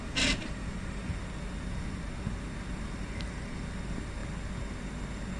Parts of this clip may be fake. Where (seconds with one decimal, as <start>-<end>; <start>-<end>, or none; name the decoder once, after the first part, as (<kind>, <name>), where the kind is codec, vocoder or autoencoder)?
none